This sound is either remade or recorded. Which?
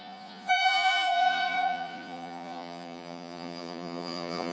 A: remade